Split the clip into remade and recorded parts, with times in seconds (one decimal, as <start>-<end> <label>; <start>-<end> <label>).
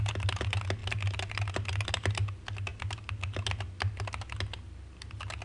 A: 0.0-5.4 recorded